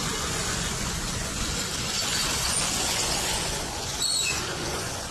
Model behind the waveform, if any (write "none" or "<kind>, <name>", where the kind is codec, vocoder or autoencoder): vocoder, Vocos